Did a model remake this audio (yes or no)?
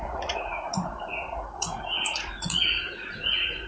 yes